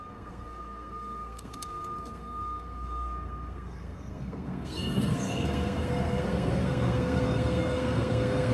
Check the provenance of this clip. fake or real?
fake